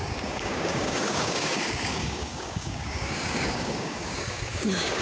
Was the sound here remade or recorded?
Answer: remade